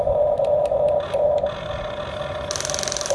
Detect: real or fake real